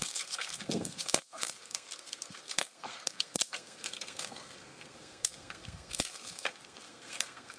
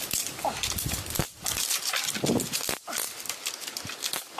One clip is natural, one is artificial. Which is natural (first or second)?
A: second